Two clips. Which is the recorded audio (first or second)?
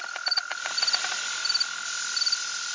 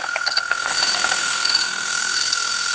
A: first